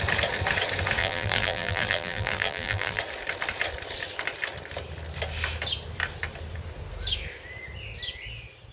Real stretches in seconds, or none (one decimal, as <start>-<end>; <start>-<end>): 0.0-1.0; 3.0-8.7